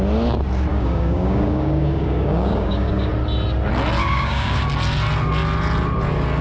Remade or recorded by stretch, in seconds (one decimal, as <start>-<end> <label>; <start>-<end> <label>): 0.0-0.7 recorded; 0.7-3.1 remade; 3.1-4.0 recorded; 4.0-4.6 remade; 4.6-6.4 recorded